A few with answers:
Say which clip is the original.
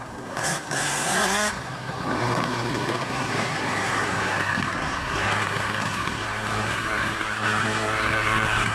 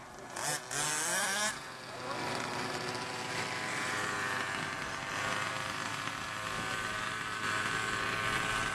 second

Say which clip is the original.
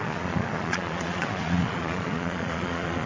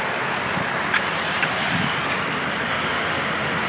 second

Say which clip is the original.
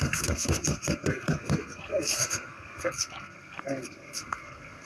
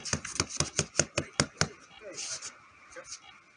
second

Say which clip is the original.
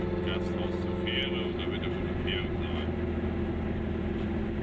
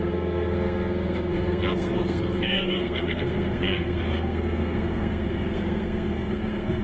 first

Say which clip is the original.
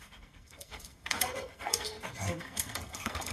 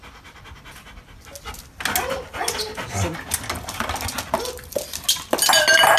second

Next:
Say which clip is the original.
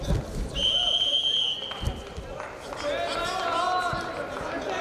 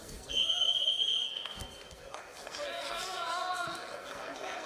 first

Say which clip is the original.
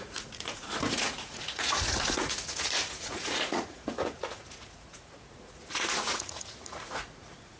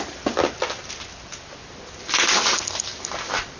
second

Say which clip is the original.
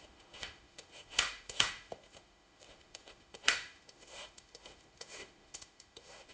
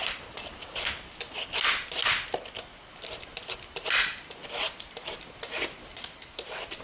second